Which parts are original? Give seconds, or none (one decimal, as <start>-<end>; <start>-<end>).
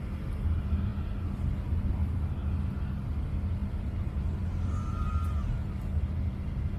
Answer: 0.0-6.8